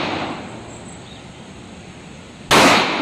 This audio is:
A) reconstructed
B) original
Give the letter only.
B